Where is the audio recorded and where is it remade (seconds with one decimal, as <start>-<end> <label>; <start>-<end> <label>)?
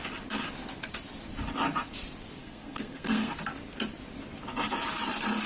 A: 0.0-2.4 recorded; 2.4-3.3 remade; 3.3-5.5 recorded